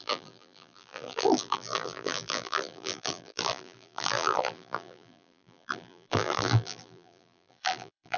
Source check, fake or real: fake